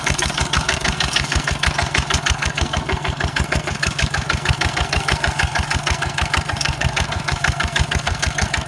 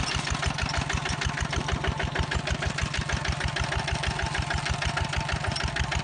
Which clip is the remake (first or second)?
first